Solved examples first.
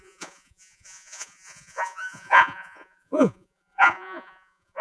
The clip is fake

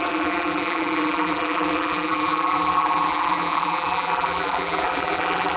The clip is fake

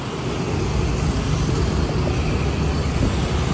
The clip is real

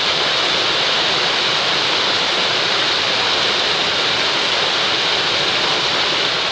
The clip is real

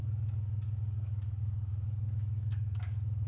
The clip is fake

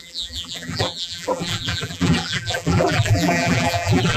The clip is fake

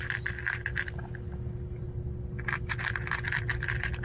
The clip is real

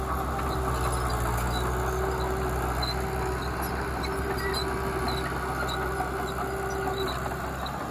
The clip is real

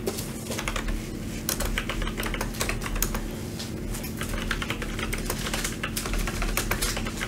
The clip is real